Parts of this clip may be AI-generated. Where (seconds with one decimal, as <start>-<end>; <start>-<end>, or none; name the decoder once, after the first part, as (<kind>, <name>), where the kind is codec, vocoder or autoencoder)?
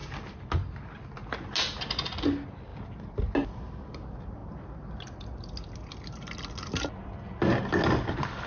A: none